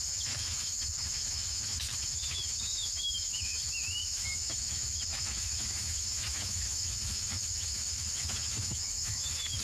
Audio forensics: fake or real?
fake